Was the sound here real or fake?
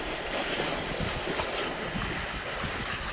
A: real